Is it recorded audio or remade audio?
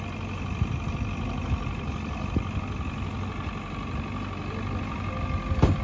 recorded